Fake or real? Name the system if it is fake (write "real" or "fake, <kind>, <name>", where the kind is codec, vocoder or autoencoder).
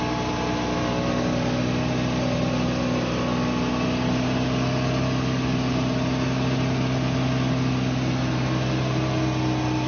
real